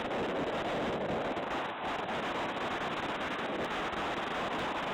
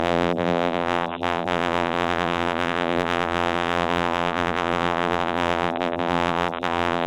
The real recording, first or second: first